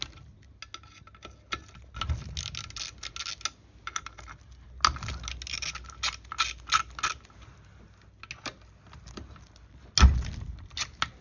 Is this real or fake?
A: real